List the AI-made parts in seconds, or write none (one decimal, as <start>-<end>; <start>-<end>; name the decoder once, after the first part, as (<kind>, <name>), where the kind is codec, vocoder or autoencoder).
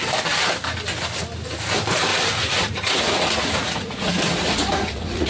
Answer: 2.1-5.3 (vocoder, Vocos)